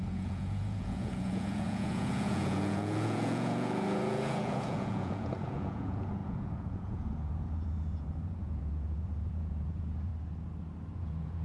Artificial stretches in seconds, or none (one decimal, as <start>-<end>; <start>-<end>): 0.0-10.1; 11.0-11.4